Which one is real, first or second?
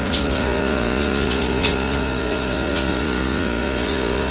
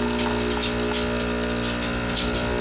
second